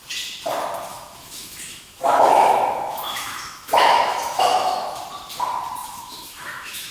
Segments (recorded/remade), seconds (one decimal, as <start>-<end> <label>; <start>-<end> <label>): 0.0-0.9 recorded; 0.9-5.0 remade; 5.0-5.8 recorded; 5.8-6.9 remade